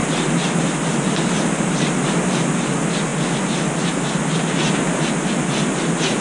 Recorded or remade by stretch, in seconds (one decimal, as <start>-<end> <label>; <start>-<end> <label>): 0.0-6.2 recorded